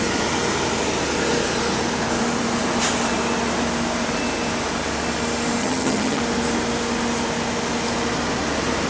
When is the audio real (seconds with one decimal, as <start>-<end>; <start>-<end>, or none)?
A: 0.0-5.6; 6.2-8.9